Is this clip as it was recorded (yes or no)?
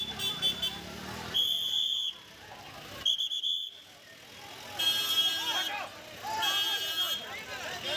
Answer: yes